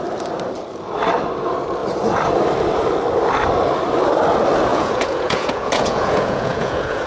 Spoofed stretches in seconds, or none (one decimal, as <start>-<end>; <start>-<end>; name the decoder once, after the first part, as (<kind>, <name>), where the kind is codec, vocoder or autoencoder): 4.7-7.1 (vocoder, Vocos)